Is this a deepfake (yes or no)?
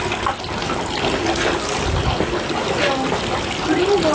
no